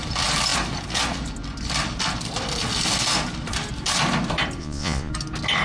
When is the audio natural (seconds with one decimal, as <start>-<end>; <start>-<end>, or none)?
0.0-4.6; 5.1-5.6